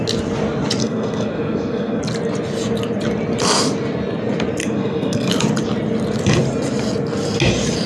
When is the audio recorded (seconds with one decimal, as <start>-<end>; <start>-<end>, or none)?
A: 0.0-0.8; 2.0-4.6; 5.3-7.9